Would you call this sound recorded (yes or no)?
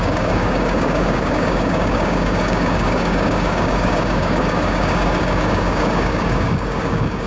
no